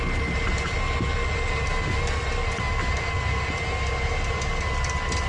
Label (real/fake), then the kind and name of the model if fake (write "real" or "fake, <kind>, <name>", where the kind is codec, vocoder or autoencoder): real